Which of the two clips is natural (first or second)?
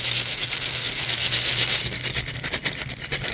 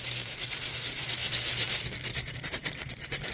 first